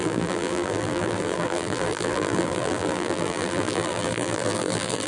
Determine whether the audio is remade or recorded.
remade